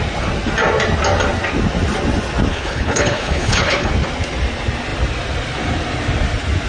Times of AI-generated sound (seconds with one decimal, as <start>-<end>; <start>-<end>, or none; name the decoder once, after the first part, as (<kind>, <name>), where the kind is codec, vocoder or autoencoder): 2.5-3.9 (codec, HILCodec)